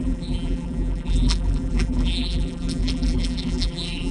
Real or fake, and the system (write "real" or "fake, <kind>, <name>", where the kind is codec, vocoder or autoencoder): fake, vocoder, BigVGAN v2